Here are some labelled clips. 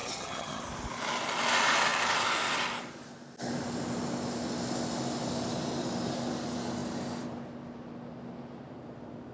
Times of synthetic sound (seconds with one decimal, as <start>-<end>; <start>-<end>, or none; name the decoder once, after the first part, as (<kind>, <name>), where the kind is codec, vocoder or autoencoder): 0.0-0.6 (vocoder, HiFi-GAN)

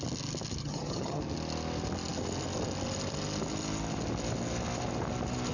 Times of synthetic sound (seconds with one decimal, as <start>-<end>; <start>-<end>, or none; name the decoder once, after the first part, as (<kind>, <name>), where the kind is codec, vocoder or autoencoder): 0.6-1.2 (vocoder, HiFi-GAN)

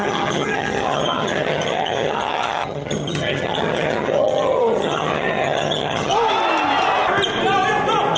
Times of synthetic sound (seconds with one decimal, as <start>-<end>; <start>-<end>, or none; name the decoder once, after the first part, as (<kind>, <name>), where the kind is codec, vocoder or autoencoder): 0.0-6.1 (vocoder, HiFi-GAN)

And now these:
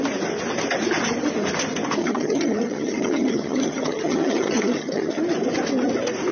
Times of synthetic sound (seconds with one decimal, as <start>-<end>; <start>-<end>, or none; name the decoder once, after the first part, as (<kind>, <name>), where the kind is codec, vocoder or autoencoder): 2.0-5.2 (vocoder, HiFi-GAN)

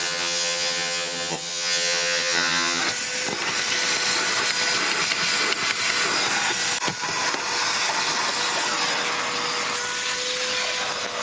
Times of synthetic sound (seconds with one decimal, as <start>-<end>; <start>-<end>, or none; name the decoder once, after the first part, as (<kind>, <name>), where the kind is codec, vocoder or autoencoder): 0.0-2.8 (vocoder, HiFi-GAN)